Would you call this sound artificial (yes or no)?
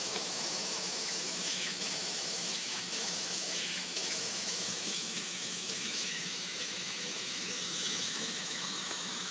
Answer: yes